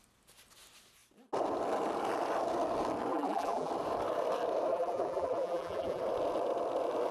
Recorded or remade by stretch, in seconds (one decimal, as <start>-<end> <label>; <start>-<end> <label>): 0.0-3.1 recorded; 3.1-3.7 remade; 3.7-4.7 recorded; 4.7-6.0 remade; 6.0-7.1 recorded